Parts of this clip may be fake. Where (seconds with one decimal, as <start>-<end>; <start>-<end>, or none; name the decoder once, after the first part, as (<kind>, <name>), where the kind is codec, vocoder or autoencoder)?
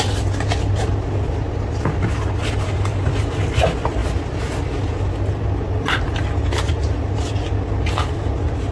none